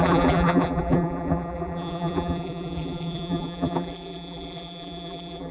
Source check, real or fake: fake